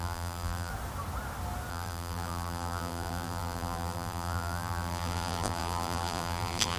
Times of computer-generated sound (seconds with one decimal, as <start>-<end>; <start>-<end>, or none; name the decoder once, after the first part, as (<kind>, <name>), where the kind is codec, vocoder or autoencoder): 0.0-0.7 (vocoder, BigVGAN v2); 1.7-6.8